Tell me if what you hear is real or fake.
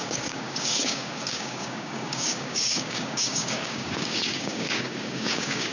fake